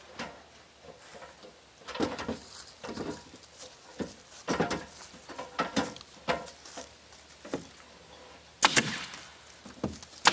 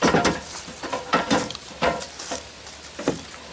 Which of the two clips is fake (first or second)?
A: second